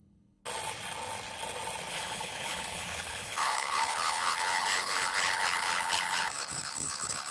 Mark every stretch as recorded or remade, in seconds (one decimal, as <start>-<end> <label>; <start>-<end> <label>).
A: 0.0-0.4 remade; 0.4-1.9 recorded; 1.9-7.3 remade